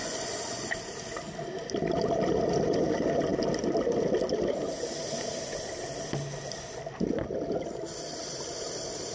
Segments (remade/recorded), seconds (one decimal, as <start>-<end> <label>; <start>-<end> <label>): 0.0-0.7 remade; 0.7-9.1 recorded